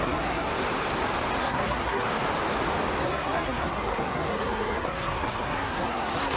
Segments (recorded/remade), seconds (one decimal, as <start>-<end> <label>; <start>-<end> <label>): 0.0-0.5 remade; 0.5-1.4 recorded; 1.4-2.1 remade; 2.1-3.0 recorded; 3.0-6.4 remade